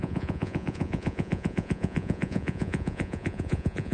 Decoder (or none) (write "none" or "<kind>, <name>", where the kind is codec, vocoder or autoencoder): vocoder, Vocos